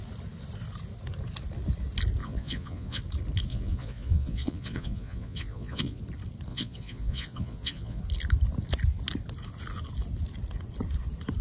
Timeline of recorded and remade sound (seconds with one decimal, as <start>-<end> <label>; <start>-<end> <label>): 0.0-2.2 recorded; 2.2-3.0 remade; 3.0-3.5 recorded; 3.5-6.0 remade; 6.0-6.5 recorded; 6.5-8.0 remade; 8.0-11.4 recorded